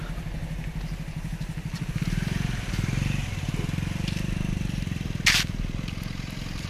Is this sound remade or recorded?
recorded